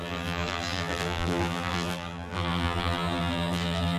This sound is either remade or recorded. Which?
remade